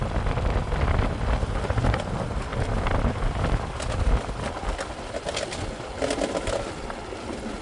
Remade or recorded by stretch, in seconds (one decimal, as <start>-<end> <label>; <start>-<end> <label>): 0.0-7.6 recorded